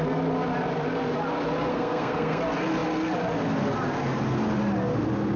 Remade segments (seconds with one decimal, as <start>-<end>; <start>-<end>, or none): 1.7-2.4